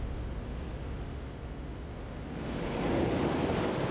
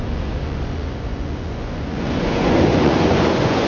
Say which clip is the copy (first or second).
second